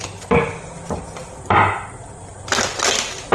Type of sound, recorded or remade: recorded